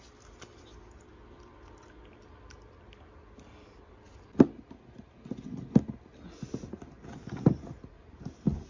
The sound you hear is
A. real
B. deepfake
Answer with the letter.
A